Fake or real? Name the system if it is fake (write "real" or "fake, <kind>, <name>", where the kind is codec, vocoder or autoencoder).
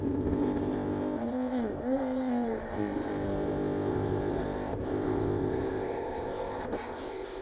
fake, codec, ZipCodec